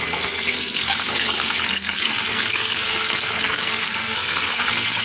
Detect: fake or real fake